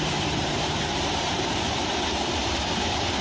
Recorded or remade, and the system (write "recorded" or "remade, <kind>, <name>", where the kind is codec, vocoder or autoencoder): remade, vocoder, BigVGAN v2